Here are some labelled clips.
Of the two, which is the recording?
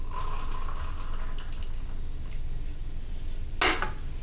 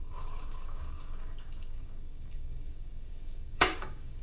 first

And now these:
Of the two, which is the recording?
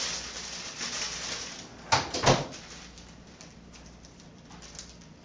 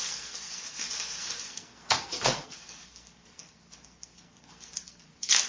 first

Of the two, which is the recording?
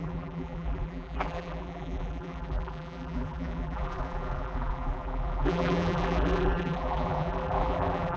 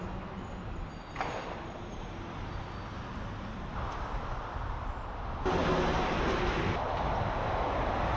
second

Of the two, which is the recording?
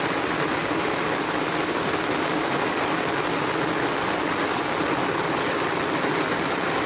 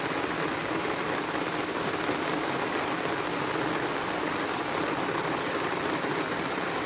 first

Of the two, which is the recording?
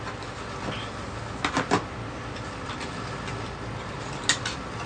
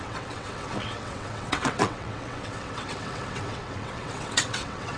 first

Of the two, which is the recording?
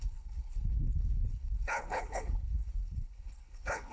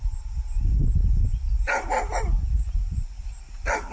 second